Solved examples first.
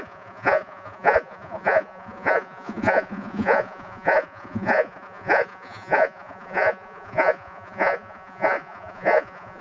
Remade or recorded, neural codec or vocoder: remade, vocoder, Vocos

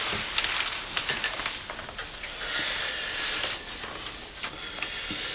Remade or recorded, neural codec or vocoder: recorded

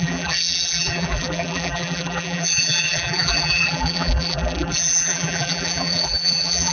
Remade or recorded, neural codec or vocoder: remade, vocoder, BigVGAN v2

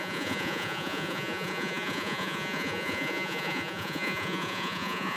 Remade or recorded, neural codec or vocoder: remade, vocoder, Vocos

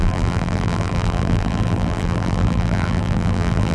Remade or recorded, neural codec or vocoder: remade, vocoder, BigVGAN v2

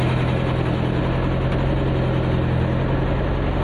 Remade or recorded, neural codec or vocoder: recorded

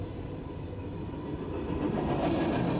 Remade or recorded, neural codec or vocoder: recorded